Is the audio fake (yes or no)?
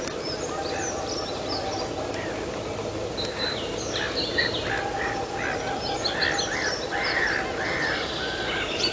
no